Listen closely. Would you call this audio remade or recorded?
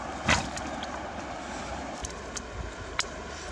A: recorded